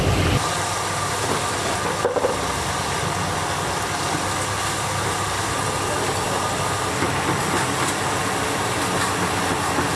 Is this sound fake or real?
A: real